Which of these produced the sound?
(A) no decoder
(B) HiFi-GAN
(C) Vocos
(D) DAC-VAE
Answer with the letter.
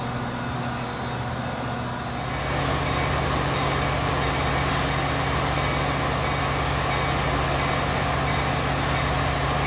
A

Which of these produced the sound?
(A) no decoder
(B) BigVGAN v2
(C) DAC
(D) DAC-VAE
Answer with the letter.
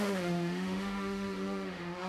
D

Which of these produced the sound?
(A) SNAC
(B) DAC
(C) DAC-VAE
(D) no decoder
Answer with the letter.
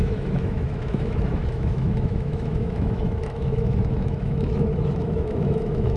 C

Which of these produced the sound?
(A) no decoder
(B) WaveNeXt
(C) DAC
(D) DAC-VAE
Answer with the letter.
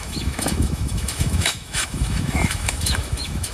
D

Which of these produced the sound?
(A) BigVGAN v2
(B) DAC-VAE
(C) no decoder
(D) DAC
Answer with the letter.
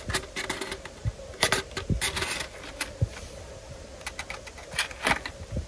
C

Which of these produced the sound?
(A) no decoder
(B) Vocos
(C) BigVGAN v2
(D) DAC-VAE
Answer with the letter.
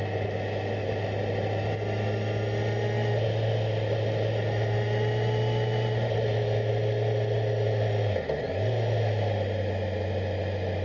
A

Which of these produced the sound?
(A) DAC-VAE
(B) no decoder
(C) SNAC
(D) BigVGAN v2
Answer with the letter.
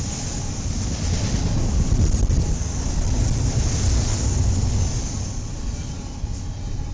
B